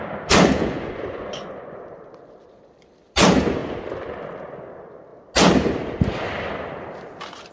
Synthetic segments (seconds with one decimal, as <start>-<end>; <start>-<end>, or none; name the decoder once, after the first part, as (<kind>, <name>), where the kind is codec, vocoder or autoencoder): 0.6-1.8 (vocoder, Vocos)